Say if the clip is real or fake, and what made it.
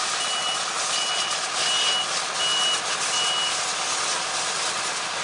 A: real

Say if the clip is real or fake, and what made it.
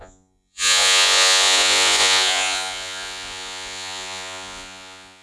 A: fake, vocoder, Vocos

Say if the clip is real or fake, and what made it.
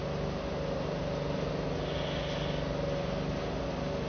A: real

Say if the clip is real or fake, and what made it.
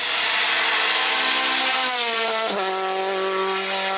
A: real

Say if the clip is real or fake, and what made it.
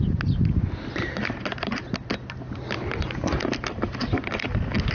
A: real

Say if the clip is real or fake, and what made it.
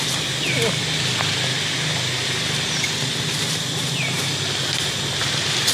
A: real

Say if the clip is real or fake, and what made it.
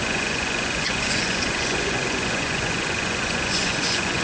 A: fake, vocoder, Vocos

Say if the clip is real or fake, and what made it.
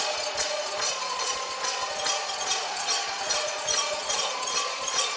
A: fake, vocoder, Vocos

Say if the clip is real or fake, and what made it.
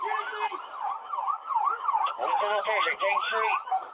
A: real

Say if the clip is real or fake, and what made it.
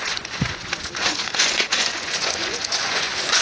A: fake, vocoder, Vocos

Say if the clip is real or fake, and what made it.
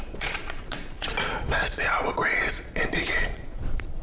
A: fake, vocoder, Vocos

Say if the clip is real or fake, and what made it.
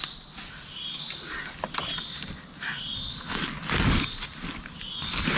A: real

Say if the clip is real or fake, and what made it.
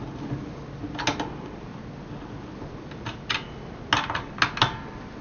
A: real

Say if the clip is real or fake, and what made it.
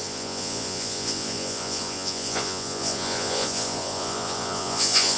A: fake, vocoder, Vocos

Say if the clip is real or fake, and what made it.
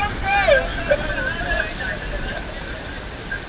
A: real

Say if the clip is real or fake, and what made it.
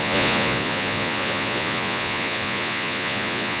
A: fake, vocoder, Vocos